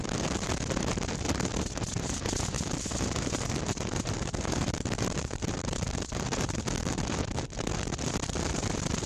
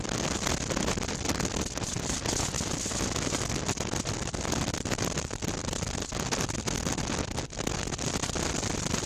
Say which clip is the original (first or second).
second